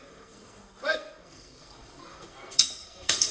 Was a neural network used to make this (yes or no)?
yes